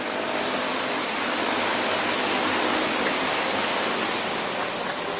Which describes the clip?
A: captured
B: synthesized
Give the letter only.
A